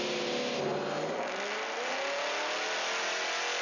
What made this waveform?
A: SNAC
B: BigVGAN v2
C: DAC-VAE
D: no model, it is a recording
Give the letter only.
D